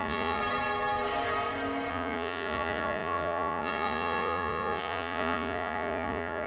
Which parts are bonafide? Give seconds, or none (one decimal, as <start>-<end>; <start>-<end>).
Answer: 0.4-1.9